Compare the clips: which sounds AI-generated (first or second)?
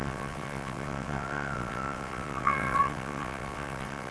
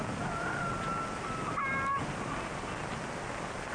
first